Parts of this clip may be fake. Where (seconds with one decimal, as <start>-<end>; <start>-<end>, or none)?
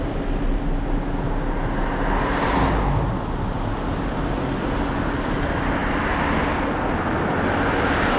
none